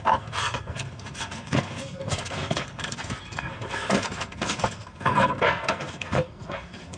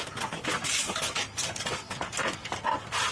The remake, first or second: first